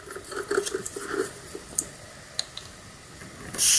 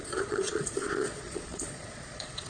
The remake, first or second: second